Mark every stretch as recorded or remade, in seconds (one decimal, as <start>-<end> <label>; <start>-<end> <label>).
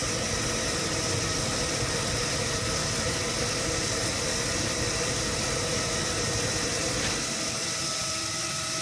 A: 0.0-4.3 recorded; 4.3-5.8 remade; 5.8-8.8 recorded